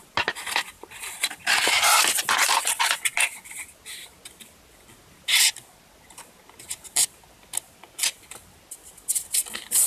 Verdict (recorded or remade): recorded